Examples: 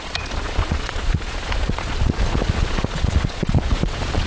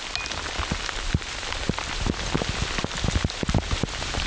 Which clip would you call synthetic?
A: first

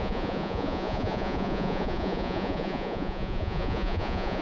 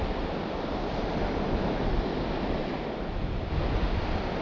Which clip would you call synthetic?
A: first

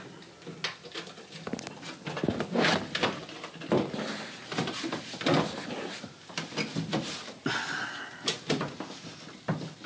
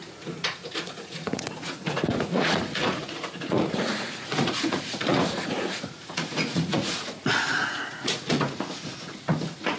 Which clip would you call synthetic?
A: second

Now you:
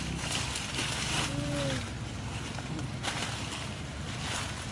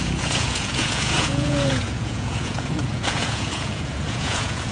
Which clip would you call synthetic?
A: second